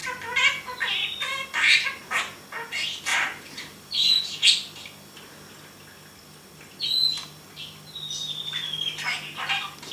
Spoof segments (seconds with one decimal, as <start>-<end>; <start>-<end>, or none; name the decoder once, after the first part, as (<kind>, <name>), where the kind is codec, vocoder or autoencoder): 3.1-4.2 (vocoder, BigVGAN v2)